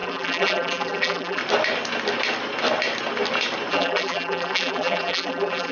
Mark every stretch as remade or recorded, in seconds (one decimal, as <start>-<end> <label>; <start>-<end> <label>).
0.0-1.4 remade; 1.4-3.7 recorded; 3.7-5.7 remade